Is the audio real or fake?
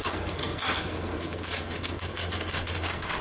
fake